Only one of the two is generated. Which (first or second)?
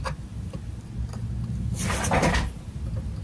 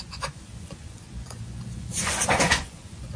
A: second